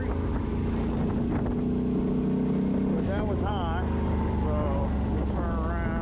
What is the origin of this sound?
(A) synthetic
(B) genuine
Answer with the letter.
B